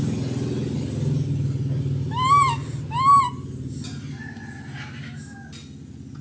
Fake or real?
real